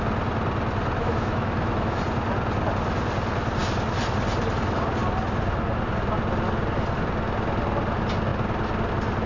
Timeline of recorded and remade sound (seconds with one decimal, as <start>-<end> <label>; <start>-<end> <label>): 0.0-1.0 recorded; 1.0-2.0 remade; 2.0-9.3 recorded